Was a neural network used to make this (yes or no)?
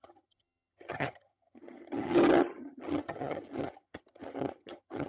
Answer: yes